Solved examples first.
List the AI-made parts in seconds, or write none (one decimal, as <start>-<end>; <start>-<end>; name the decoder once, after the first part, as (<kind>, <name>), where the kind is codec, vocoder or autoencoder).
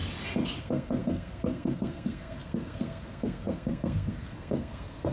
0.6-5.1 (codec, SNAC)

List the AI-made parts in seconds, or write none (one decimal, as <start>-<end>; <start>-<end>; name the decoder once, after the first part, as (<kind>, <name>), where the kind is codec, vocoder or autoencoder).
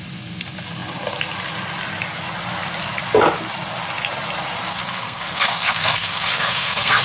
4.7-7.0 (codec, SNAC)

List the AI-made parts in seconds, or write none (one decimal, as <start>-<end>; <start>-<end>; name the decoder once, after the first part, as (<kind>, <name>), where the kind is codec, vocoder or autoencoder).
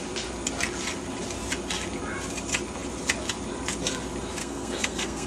4.4-5.3 (codec, SNAC)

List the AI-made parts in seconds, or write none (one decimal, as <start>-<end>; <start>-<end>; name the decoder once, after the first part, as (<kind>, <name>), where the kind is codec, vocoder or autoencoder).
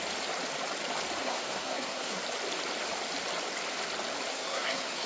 1.2-2.2 (codec, SNAC); 4.3-5.1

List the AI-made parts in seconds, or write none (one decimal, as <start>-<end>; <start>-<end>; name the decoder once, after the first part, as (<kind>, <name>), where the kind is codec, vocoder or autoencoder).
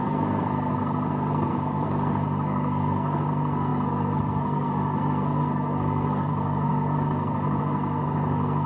0.0-8.7 (codec, SNAC)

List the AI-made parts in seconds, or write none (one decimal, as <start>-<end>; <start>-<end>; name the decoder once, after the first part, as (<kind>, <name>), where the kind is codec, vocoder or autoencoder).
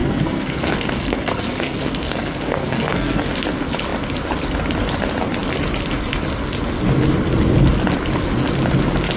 0.0-3.4 (codec, SNAC)